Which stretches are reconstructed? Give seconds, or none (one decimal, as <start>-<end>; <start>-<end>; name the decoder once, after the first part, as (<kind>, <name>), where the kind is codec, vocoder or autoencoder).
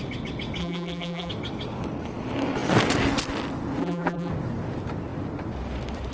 0.6-1.3 (vocoder, BigVGAN v2); 3.8-4.3